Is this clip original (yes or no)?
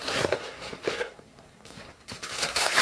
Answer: no